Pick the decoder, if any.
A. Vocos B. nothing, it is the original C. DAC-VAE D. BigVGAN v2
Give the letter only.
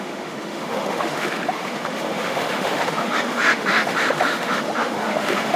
C